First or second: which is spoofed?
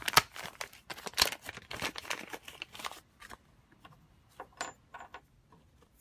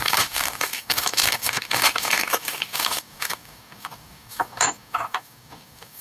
second